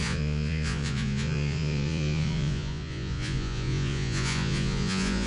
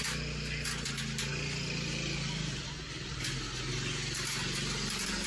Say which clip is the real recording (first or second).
second